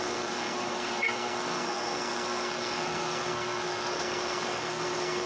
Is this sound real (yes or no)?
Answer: no